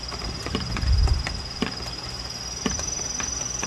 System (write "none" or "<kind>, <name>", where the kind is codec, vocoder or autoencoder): none